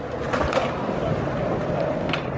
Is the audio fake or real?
real